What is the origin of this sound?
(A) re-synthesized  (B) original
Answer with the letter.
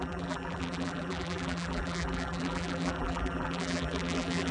A